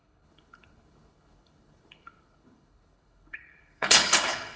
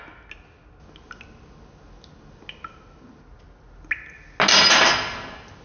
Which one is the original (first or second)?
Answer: second